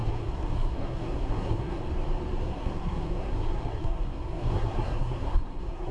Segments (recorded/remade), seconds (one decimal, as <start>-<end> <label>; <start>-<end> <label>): 0.0-1.8 remade; 1.8-2.4 recorded; 2.4-5.9 remade